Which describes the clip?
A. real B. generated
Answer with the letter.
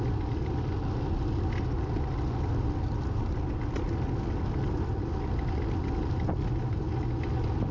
A